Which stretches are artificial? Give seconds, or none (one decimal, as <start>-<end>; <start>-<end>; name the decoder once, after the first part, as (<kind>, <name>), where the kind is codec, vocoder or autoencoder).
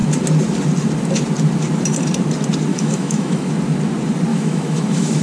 2.7-3.5 (autoencoder, DAC-VAE); 4.3-5.2